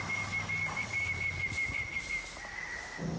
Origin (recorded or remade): recorded